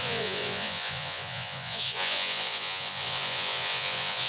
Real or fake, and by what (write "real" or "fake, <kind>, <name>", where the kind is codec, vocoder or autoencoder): fake, vocoder, Vocos